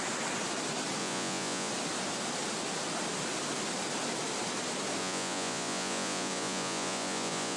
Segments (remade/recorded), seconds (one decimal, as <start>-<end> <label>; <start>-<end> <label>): 0.0-1.0 recorded; 1.0-1.7 remade; 1.7-5.0 recorded; 5.0-7.6 remade